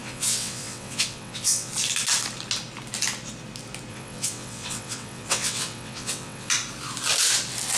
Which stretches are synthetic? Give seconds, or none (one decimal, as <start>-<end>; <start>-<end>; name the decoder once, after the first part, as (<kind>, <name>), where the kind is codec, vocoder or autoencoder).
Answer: 0.0-1.7 (vocoder, WaveNeXt); 3.9-6.5